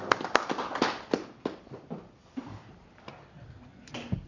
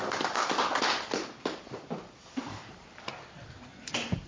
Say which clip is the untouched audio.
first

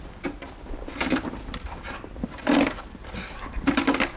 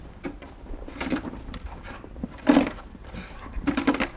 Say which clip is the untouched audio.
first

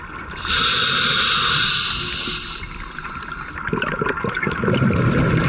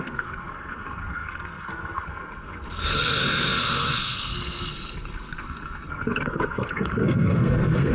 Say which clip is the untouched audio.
first